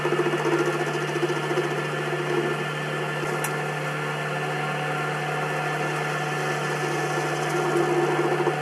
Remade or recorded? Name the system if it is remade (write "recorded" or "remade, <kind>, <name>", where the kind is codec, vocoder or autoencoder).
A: recorded